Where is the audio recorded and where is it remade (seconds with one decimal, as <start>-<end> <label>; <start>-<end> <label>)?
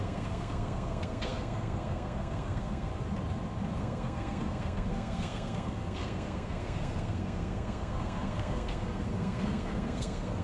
0.0-2.9 remade; 2.9-3.8 recorded; 3.8-10.4 remade